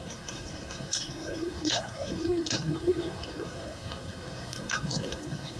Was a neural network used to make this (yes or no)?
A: yes